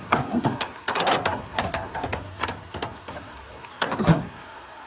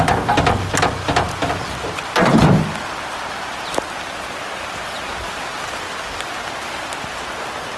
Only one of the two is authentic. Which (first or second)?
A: second